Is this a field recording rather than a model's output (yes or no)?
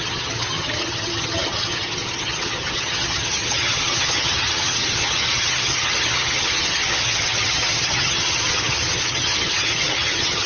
no